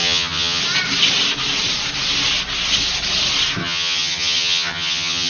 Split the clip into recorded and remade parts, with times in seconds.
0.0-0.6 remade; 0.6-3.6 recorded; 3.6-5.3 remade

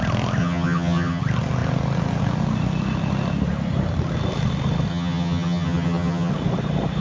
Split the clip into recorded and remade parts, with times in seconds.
0.0-0.4 recorded; 0.4-1.2 remade; 1.2-4.9 recorded; 4.9-6.3 remade; 6.3-7.0 recorded

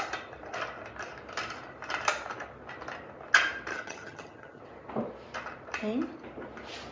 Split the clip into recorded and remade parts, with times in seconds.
0.0-3.7 recorded; 3.7-4.6 remade; 4.6-6.9 recorded

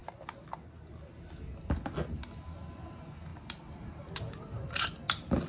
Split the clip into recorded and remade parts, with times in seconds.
0.0-5.5 recorded

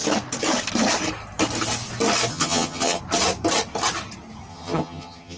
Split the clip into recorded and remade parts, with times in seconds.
0.0-2.3 recorded; 2.3-3.0 remade; 3.0-4.5 recorded; 4.5-5.4 remade

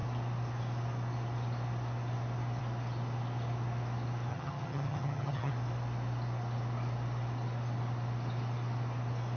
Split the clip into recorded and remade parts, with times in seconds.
0.0-4.3 recorded; 4.3-5.5 remade; 5.5-9.4 recorded

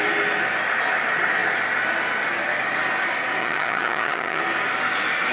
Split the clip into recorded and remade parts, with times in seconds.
0.0-3.4 recorded; 3.4-4.4 remade; 4.4-5.3 recorded

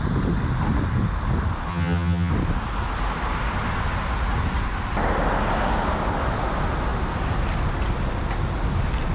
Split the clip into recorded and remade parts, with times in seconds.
0.0-1.7 recorded; 1.7-2.3 remade; 2.3-9.1 recorded